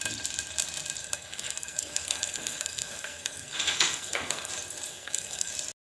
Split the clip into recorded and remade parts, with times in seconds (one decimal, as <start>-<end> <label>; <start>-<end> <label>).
0.0-1.0 recorded; 1.0-4.5 remade; 4.5-4.9 recorded; 4.9-5.5 remade; 5.5-5.9 recorded